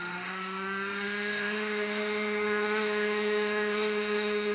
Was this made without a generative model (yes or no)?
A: no